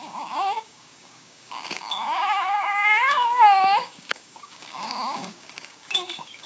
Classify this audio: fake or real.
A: fake